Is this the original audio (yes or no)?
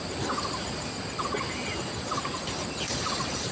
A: yes